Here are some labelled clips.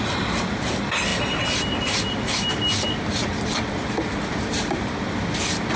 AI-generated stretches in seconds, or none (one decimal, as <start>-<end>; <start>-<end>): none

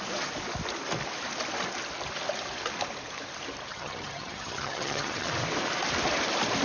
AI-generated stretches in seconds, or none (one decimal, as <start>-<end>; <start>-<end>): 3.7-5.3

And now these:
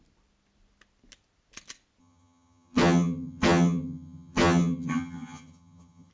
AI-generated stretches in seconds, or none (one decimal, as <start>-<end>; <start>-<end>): 2.0-6.1